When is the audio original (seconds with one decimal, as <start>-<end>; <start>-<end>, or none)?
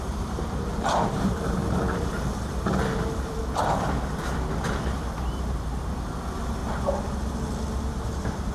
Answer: 3.4-4.7; 6.6-7.7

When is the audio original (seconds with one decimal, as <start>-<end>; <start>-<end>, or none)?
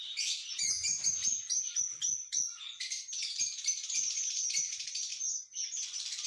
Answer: 5.1-5.7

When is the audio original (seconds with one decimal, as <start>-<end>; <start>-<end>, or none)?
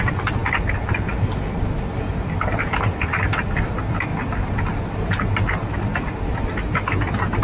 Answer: 0.4-2.7; 4.1-4.8; 5.3-5.9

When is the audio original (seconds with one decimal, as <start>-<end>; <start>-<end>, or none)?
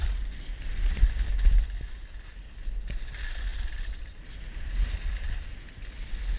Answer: 0.0-3.5; 4.0-6.4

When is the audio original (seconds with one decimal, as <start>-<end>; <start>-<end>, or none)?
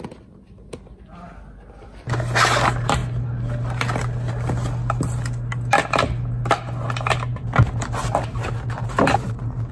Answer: 0.0-9.7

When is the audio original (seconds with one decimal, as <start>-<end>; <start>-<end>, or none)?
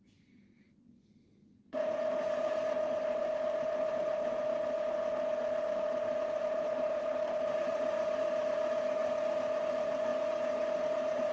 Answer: 4.5-6.4; 9.0-9.6; 10.1-10.8